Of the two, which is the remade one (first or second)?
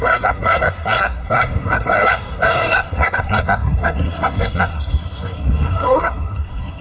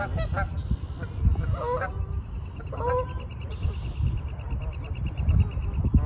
first